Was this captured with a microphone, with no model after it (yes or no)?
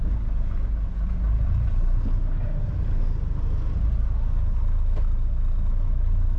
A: yes